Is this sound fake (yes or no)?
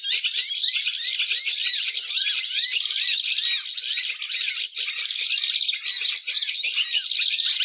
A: no